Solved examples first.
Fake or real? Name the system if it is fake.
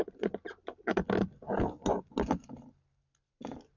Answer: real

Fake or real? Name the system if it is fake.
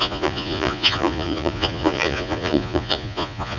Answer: fake, vocoder, Vocos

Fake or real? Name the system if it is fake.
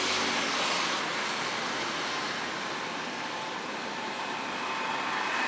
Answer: real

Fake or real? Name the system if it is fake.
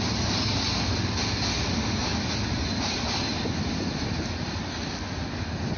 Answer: real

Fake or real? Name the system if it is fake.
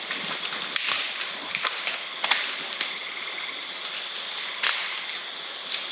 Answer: real